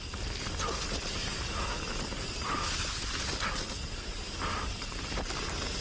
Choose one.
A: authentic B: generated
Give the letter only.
A